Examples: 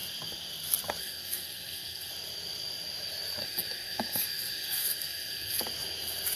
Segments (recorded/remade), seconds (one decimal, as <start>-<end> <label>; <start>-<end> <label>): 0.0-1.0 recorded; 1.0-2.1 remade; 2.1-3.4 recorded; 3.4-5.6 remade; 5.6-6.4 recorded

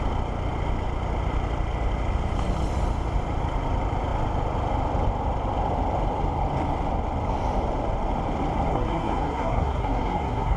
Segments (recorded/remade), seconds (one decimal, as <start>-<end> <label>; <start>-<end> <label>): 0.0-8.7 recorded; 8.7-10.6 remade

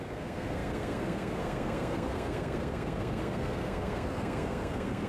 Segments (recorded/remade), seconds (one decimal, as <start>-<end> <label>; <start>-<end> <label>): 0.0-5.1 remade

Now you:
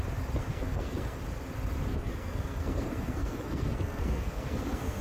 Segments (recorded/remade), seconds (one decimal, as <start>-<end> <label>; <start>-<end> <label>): 0.0-0.4 recorded; 0.4-1.2 remade; 1.2-1.9 recorded; 1.9-5.0 remade